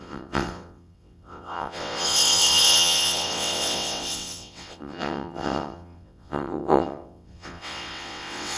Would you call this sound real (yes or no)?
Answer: no